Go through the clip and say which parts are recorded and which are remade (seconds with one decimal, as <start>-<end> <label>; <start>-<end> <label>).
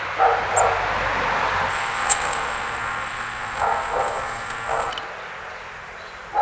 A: 0.0-1.7 recorded; 1.7-4.9 remade; 4.9-6.4 recorded